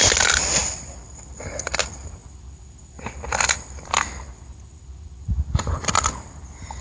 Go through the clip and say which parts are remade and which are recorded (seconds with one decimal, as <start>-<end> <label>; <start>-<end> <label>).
0.0-0.6 recorded; 0.6-1.7 remade; 1.7-2.2 recorded; 2.2-5.9 remade; 5.9-6.8 recorded